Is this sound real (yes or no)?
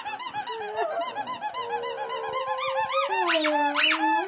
yes